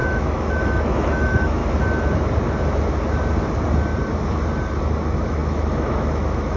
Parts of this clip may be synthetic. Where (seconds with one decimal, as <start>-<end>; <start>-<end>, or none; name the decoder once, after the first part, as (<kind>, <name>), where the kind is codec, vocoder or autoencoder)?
0.0-1.6 (autoencoder, DAC-VAE); 4.8-6.6